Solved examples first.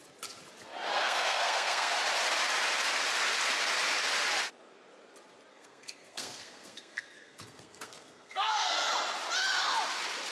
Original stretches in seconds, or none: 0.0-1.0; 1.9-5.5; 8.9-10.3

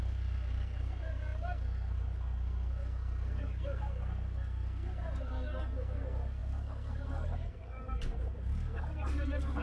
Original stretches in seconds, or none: none

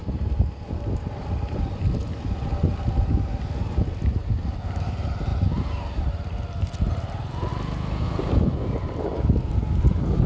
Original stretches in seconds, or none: 5.3-6.0

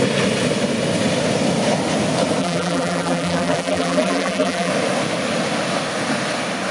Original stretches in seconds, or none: 0.0-2.4; 4.7-6.7

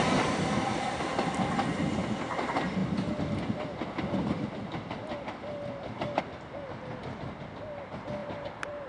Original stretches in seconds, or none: 0.0-8.2

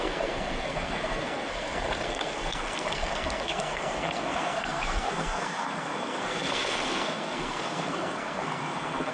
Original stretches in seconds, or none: none

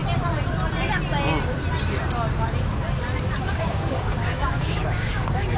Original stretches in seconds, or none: 0.0-3.4

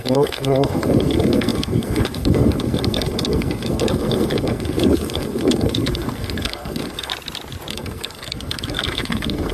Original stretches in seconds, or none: 7.1-7.7